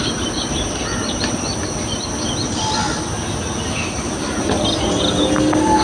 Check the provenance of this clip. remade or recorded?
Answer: recorded